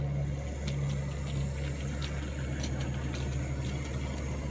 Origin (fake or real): real